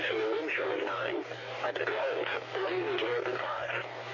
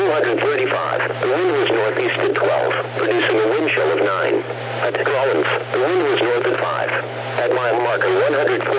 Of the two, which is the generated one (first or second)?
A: first